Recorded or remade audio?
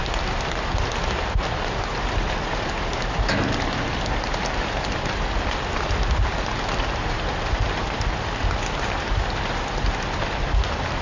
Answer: recorded